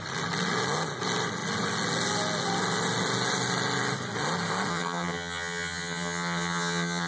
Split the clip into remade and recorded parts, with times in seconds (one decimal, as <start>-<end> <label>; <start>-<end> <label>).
0.0-4.7 recorded; 4.7-7.1 remade

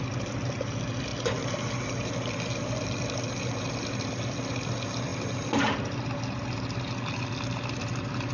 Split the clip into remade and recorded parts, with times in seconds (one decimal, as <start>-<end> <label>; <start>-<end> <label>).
0.0-8.3 recorded

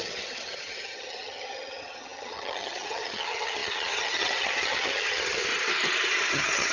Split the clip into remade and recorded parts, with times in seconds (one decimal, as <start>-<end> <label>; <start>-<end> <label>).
0.0-5.5 remade; 5.5-6.3 recorded; 6.3-6.7 remade

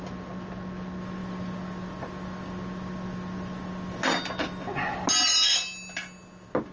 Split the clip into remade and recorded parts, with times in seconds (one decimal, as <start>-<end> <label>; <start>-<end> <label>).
0.0-6.7 recorded

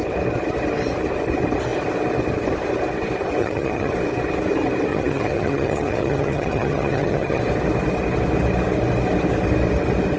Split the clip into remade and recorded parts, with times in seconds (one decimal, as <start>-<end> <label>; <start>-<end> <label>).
0.0-3.4 recorded; 3.4-3.9 remade; 3.9-4.9 recorded; 4.9-7.4 remade; 7.4-10.2 recorded

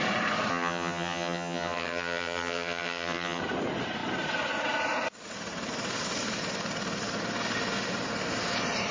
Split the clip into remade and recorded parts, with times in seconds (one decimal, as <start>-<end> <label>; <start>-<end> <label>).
0.0-0.5 recorded; 0.5-3.4 remade; 3.4-8.9 recorded